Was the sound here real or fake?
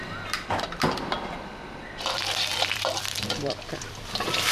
fake